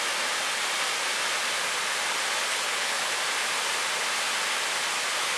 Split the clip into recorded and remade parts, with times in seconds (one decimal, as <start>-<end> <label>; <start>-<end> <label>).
0.0-2.5 recorded; 2.5-3.1 remade; 3.1-5.4 recorded